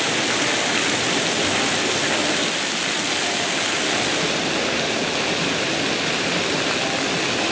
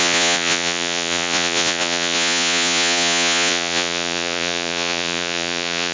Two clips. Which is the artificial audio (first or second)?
second